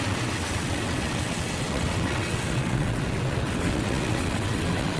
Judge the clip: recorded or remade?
remade